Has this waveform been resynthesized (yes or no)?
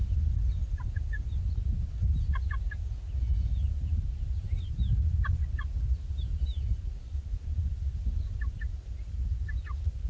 no